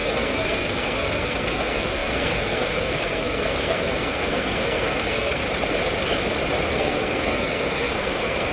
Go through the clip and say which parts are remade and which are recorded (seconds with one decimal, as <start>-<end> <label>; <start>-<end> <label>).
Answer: 0.0-5.4 remade; 5.4-6.7 recorded; 6.7-8.5 remade